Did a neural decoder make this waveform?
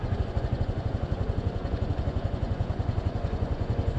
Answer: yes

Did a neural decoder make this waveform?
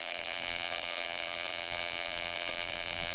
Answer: yes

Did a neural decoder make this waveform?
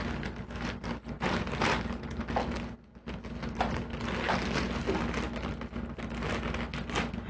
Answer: no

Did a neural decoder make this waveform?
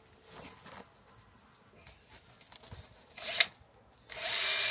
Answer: no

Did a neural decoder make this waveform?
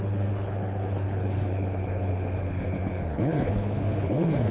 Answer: yes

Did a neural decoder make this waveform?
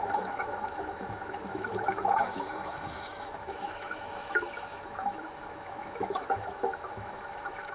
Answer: yes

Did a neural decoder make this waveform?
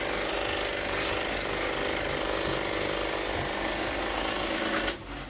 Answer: no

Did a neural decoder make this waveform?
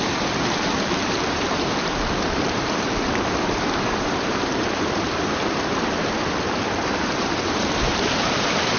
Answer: yes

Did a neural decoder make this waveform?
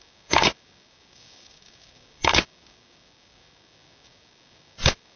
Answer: yes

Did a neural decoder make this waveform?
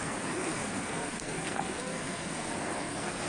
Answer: yes